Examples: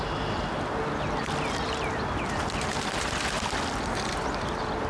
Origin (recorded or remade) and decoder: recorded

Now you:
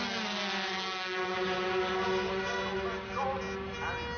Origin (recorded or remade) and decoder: recorded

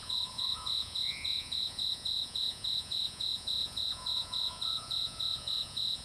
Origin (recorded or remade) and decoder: remade, vocoder, Vocos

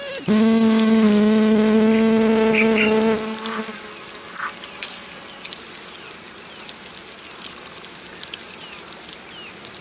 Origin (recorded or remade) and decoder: recorded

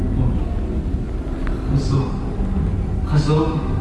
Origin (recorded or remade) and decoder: recorded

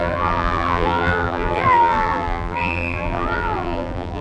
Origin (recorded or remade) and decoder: remade, vocoder, BigVGAN v2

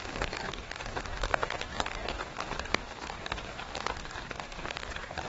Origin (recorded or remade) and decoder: remade, codec, DAC